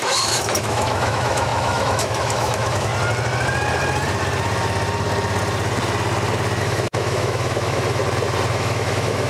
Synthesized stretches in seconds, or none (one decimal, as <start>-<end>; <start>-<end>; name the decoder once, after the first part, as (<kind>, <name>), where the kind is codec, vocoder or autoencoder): 0.0-2.9 (autoencoder, DAC-VAE); 6.6-8.0; 8.5-9.3